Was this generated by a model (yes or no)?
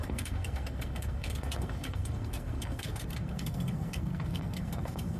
yes